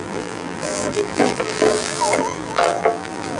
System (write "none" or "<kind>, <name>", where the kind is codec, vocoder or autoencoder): vocoder, BigVGAN v2